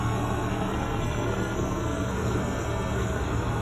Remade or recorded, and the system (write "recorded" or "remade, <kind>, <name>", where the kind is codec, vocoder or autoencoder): remade, codec, SNAC